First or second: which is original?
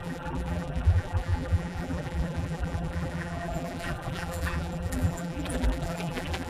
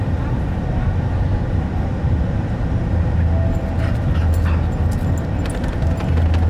second